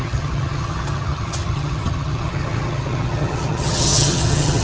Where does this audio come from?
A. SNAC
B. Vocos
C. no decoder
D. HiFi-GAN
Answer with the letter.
D